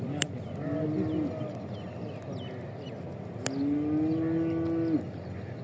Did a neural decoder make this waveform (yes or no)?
no